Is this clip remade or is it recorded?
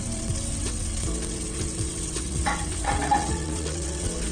remade